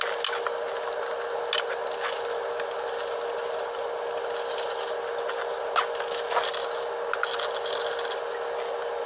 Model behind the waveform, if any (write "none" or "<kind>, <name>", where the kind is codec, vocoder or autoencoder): none